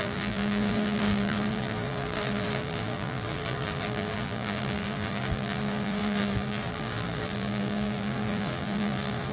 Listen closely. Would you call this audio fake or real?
fake